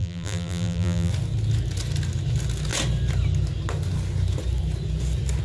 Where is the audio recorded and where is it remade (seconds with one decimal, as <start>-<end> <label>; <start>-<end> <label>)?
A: 0.0-1.1 remade; 1.1-5.4 recorded